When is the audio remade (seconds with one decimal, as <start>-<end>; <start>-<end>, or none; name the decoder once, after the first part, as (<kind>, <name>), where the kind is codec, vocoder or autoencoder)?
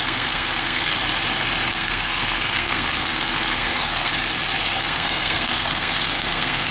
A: 0.0-0.9 (codec, SNAC); 1.7-4.1; 4.8-6.7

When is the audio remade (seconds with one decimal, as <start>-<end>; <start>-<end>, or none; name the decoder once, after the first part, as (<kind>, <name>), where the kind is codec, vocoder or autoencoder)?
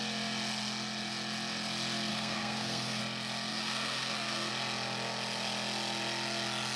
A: 2.1-3.0 (codec, SNAC); 3.5-4.5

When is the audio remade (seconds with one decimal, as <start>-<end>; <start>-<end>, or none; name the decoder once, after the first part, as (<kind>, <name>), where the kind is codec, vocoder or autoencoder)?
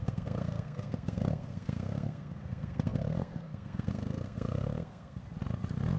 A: 0.0-5.2 (codec, SNAC)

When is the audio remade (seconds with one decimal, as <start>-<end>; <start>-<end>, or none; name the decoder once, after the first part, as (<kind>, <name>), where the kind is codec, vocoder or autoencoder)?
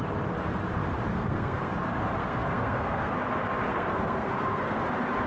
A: 1.1-1.7 (codec, SNAC); 2.2-3.1; 3.7-4.8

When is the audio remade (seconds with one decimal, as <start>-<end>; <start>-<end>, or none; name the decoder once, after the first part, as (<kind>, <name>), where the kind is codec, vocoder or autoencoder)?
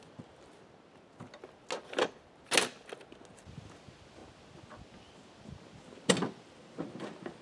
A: none